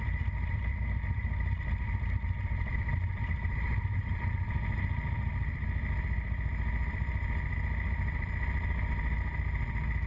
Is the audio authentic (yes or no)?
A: no